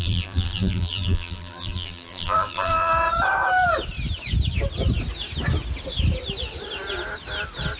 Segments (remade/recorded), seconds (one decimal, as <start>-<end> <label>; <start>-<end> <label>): 0.0-2.9 remade; 2.9-7.8 recorded

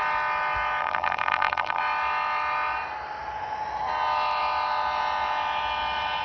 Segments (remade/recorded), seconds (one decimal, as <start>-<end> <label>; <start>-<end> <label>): 0.0-0.8 recorded; 0.8-1.8 remade; 1.8-6.2 recorded

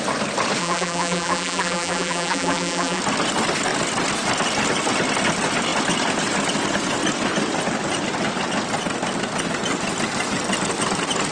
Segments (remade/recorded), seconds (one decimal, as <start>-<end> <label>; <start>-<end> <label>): 0.0-0.6 recorded; 0.6-3.0 remade; 3.0-11.3 recorded

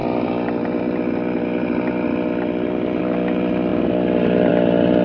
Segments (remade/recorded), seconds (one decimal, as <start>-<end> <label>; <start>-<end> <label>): 0.0-5.0 recorded